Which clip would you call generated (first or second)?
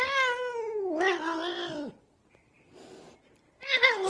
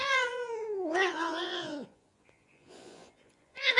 second